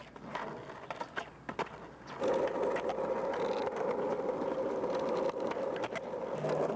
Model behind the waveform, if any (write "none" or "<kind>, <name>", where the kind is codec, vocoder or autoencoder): none